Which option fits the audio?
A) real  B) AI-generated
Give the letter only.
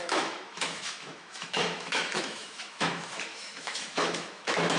B